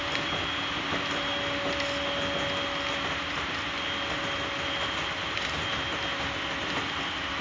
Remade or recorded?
recorded